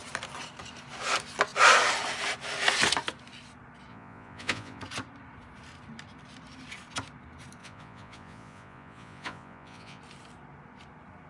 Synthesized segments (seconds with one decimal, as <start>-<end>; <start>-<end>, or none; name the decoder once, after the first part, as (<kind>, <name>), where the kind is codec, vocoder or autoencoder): 3.9-4.8 (vocoder, Vocos); 7.6-10.0